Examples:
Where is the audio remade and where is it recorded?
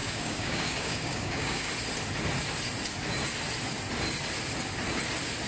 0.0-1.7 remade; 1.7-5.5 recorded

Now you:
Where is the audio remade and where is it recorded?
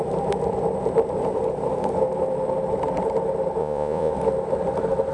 0.0-3.6 recorded; 3.6-4.1 remade; 4.1-5.1 recorded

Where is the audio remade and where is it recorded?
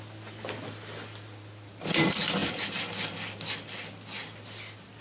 0.0-5.0 recorded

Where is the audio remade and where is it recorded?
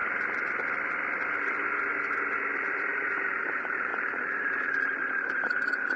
0.0-2.7 recorded; 2.7-6.0 remade